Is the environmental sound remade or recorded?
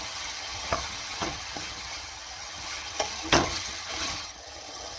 remade